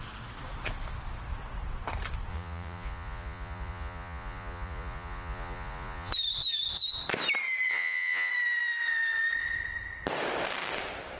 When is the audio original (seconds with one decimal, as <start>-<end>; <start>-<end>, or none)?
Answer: 0.0-2.3; 6.1-7.7; 8.3-11.2